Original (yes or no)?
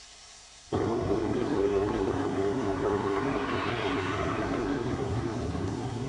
no